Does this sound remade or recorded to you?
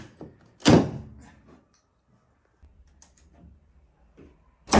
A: recorded